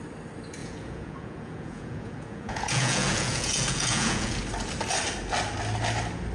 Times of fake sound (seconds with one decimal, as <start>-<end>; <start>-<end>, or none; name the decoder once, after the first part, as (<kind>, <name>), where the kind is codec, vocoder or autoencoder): 0.6-4.4 (vocoder, Vocos)

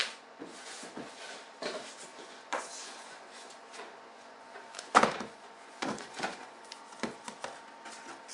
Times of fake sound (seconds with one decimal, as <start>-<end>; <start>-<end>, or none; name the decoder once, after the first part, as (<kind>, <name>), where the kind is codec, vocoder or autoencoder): 0.0-1.2 (vocoder, Vocos); 2.1-7.0

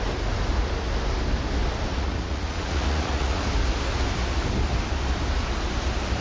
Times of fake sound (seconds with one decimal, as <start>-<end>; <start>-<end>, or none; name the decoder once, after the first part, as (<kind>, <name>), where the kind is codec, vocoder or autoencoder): 1.9-3.4 (vocoder, Vocos)

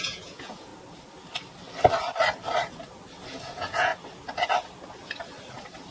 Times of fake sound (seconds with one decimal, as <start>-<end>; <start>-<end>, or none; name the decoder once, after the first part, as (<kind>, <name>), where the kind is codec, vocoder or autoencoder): 0.0-0.7 (vocoder, Vocos); 3.4-3.9